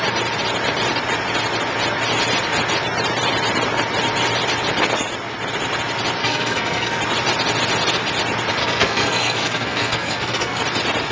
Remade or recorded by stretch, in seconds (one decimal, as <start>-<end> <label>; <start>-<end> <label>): 0.0-6.2 recorded; 6.2-7.0 remade; 7.0-8.6 recorded; 8.6-10.6 remade; 10.6-11.1 recorded